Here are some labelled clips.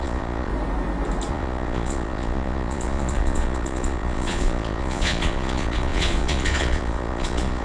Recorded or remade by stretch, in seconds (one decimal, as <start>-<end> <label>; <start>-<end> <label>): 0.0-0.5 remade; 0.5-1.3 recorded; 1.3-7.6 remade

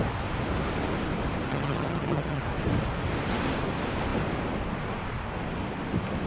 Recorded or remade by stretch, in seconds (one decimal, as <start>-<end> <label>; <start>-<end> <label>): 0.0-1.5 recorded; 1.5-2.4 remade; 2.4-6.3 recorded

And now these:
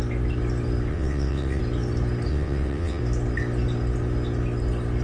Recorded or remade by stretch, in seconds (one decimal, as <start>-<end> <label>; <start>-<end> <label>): 0.0-0.9 recorded; 0.9-1.6 remade; 1.6-2.3 recorded; 2.3-3.0 remade; 3.0-5.0 recorded